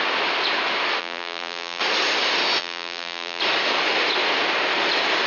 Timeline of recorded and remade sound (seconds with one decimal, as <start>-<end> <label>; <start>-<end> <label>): 0.0-1.0 recorded; 1.0-1.8 remade; 1.8-2.6 recorded; 2.6-3.4 remade; 3.4-5.3 recorded